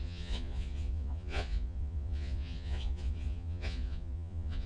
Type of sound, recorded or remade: remade